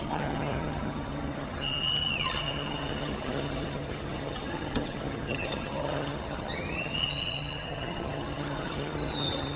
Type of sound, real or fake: fake